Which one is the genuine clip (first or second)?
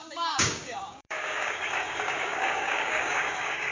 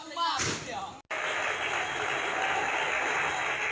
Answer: second